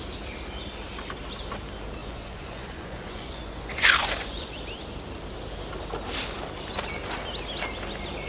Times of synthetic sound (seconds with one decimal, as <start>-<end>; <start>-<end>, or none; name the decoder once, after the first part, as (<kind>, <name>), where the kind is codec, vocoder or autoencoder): 2.0-4.5 (vocoder, Vocos)